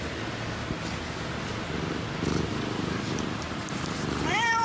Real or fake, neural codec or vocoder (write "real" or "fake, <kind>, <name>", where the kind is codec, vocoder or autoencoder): real